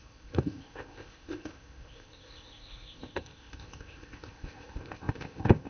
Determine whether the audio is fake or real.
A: fake